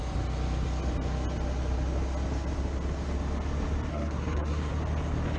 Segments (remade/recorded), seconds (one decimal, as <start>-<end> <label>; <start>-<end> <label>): 0.0-3.9 recorded; 3.9-4.7 remade; 4.7-5.4 recorded